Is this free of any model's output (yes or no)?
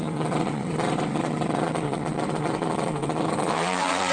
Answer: no